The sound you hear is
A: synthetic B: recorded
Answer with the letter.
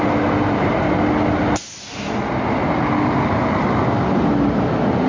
B